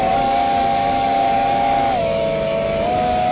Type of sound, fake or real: fake